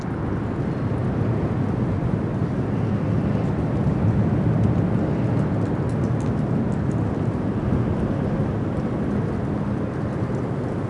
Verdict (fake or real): real